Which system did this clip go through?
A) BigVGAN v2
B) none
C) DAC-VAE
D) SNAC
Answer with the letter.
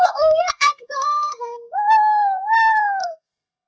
D